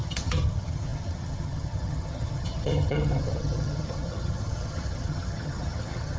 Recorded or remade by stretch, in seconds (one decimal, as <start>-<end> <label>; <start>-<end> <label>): 0.0-6.2 remade